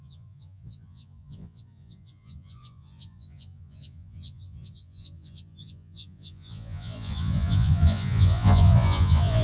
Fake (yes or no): yes